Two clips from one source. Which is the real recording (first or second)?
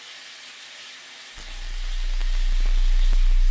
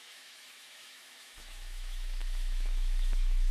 first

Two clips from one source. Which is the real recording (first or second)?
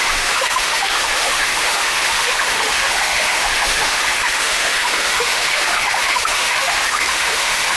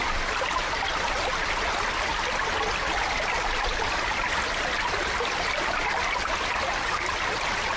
second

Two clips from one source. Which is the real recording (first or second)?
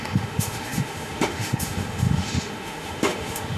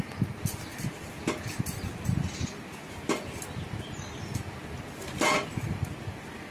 second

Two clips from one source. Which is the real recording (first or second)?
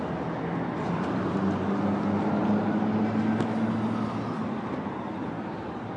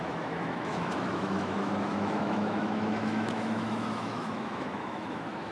first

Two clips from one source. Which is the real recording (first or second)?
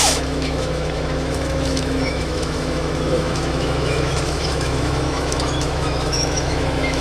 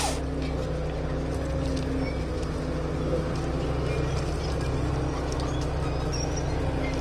second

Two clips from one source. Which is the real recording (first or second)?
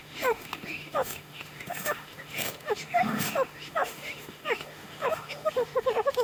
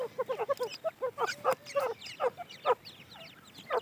second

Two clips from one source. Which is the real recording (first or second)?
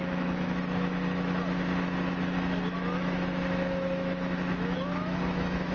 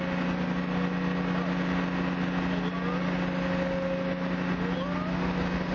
second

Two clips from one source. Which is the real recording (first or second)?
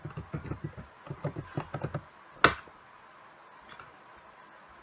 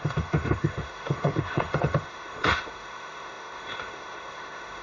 first